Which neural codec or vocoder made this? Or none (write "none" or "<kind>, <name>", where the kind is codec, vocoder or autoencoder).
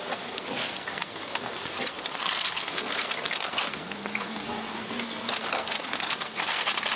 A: codec, SNAC